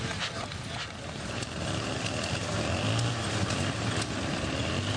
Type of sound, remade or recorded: recorded